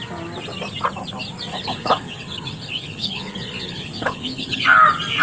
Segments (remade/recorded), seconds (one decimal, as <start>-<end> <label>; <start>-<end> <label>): 0.0-1.5 recorded; 1.5-4.6 remade; 4.6-5.2 recorded